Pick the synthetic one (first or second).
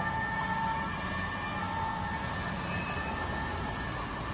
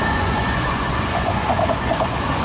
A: second